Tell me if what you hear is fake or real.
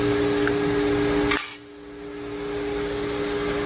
real